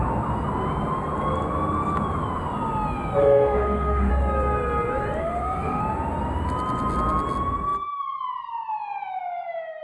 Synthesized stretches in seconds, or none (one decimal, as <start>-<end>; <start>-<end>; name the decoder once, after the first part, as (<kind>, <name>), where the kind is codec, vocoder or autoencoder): 3.2-4.1 (autoencoder, DAC-VAE); 5.2-5.8